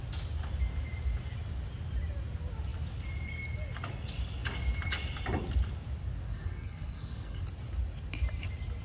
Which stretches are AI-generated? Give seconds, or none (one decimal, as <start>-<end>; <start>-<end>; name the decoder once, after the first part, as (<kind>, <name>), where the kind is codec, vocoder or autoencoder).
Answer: 6.3-7.4 (codec, SNAC)